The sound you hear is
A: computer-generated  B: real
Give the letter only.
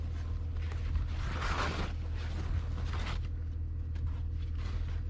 B